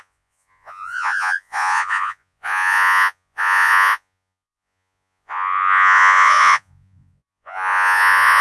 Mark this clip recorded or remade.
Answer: remade